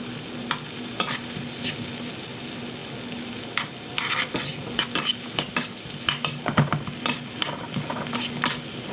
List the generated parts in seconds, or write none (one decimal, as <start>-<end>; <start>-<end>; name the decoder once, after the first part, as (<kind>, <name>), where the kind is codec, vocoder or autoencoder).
none